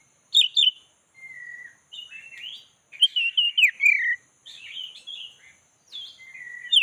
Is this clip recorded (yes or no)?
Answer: yes